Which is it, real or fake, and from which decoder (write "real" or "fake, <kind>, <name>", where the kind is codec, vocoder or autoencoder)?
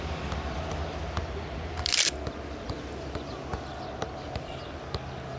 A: real